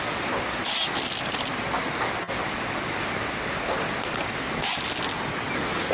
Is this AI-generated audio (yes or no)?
no